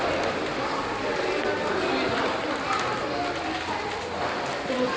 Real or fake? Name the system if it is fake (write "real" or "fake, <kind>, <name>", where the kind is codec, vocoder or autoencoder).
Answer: real